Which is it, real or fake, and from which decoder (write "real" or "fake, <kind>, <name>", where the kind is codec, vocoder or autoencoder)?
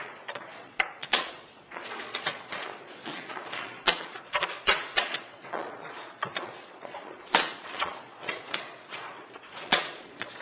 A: fake, vocoder, Vocos